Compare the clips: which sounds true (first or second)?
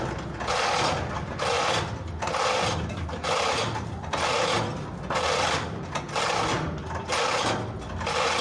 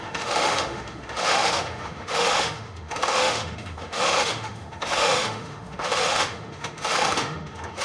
first